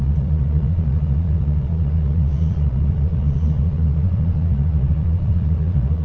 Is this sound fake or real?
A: fake